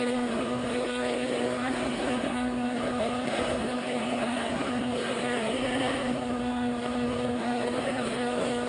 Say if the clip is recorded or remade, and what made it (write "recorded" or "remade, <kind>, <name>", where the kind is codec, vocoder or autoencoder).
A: remade, codec, SNAC